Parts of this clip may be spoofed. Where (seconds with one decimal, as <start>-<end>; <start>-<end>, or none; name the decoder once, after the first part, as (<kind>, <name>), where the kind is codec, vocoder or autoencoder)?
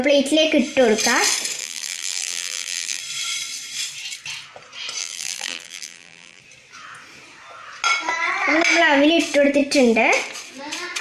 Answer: 1.6-3.0 (vocoder, BigVGAN v2); 5.0-6.4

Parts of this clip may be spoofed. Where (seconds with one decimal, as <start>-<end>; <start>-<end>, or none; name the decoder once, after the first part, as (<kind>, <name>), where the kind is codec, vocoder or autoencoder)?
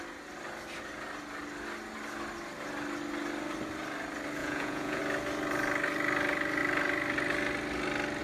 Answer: 4.4-5.0 (vocoder, Vocos)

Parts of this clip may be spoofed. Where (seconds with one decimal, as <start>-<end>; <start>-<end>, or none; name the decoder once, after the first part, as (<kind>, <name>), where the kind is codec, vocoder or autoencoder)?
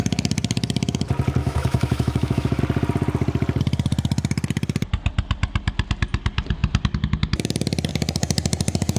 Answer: 1.4-2.6 (autoencoder, DAC-VAE)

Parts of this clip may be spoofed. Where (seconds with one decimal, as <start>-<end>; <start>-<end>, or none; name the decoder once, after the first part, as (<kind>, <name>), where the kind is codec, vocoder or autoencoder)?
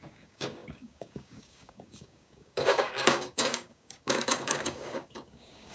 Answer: 0.0-5.7 (codec, DAC)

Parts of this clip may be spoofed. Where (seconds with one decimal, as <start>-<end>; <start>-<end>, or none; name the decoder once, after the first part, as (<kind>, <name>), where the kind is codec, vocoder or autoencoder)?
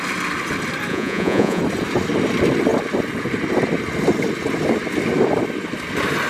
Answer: 0.9-1.6 (vocoder, Vocos)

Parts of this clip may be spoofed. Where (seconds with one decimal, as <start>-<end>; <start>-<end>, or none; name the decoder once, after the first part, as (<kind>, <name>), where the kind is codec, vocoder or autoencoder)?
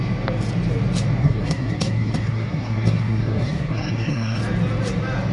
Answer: 1.2-4.4 (codec, SNAC)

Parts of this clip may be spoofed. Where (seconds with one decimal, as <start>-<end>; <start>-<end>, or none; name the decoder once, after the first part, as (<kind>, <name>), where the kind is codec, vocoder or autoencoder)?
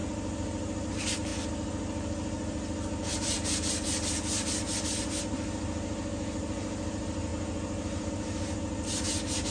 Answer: none